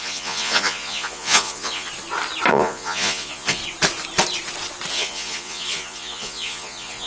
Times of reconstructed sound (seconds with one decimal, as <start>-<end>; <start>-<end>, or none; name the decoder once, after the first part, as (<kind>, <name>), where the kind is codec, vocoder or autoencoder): 0.0-1.9 (vocoder, Vocos); 2.5-3.6; 4.9-7.1